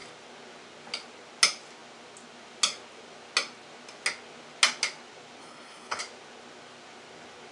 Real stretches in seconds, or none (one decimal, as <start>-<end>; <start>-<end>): 0.0-5.4; 6.0-7.5

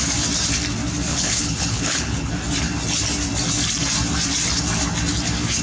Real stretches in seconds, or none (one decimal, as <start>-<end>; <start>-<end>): 0.0-1.1; 2.3-5.6